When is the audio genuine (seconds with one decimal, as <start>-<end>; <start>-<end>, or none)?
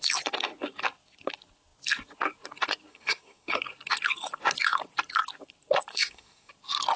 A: 0.0-2.9; 3.6-5.9; 6.5-7.0